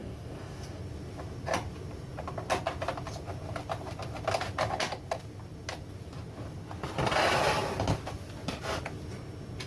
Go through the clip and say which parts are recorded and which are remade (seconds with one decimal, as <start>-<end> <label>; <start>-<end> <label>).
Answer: 0.0-0.8 remade; 0.8-9.7 recorded